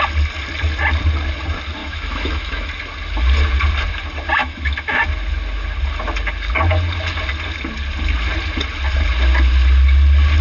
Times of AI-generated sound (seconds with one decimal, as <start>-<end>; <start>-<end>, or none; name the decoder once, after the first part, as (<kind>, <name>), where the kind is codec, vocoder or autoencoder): 1.8-2.7 (autoencoder, DAC-VAE); 4.4-5.0